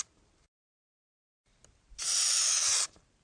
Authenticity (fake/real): fake